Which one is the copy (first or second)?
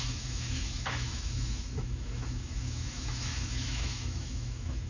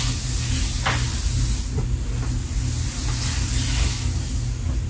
first